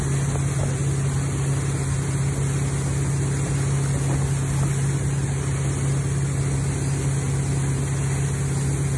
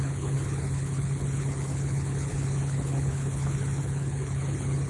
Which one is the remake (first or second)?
second